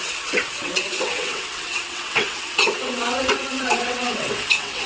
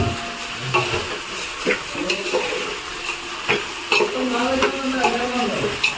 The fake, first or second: first